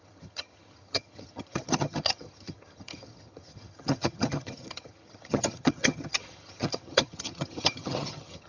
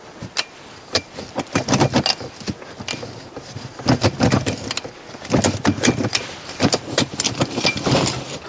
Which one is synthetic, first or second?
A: first